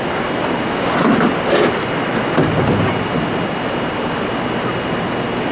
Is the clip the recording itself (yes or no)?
yes